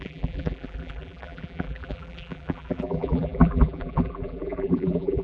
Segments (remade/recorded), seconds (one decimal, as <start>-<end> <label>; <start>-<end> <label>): 0.0-5.2 remade